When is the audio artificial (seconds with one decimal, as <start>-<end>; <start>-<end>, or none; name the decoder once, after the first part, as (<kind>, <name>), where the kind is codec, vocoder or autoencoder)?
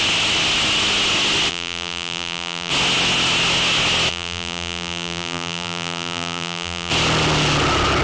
1.5-2.7 (vocoder, BigVGAN v2); 4.1-6.9